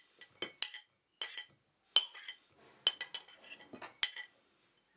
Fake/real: real